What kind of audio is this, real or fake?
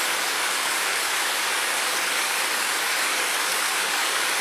fake